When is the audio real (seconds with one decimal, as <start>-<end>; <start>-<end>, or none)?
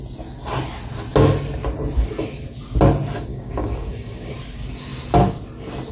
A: 0.0-3.3; 4.3-5.9